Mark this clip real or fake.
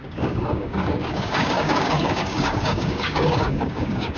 fake